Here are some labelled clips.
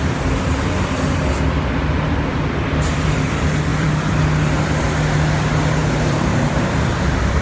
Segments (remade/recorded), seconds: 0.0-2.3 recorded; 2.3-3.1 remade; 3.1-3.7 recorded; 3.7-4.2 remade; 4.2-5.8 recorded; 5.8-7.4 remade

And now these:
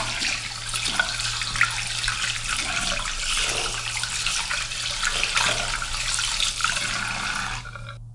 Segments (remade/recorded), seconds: 0.0-8.1 recorded

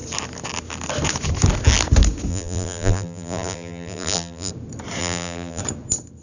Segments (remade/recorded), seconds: 0.0-2.3 recorded; 2.3-4.5 remade; 4.5-5.0 recorded; 5.0-5.6 remade; 5.6-6.2 recorded

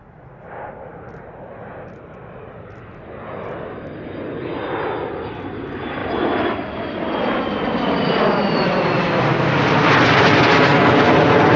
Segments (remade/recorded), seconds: 0.0-6.0 recorded; 6.0-10.6 remade; 10.6-11.6 recorded

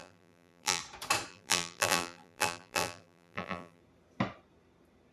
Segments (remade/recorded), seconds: 0.0-0.8 remade; 0.8-1.3 recorded; 1.3-3.8 remade; 3.8-5.1 recorded

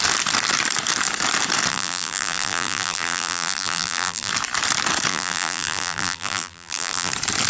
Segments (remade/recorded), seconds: 0.0-1.7 recorded; 1.7-4.3 remade; 4.3-5.1 recorded; 5.1-7.1 remade; 7.1-7.5 recorded

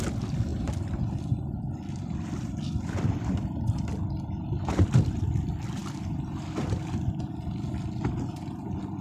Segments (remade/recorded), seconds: 0.0-0.5 recorded; 0.5-3.9 remade; 3.9-9.0 recorded